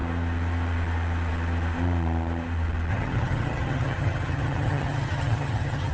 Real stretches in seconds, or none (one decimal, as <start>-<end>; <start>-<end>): 0.0-2.9